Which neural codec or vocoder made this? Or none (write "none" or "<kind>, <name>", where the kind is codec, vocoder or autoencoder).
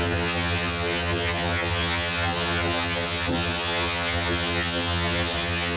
vocoder, HiFi-GAN